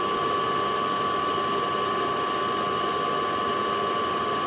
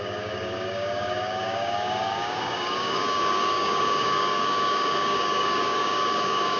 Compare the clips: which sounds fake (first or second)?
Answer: second